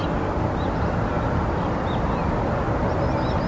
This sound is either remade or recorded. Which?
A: recorded